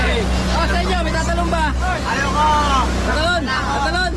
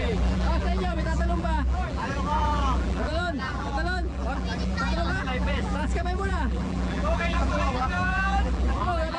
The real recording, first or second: first